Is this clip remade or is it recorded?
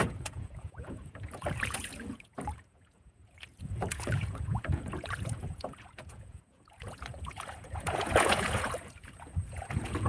remade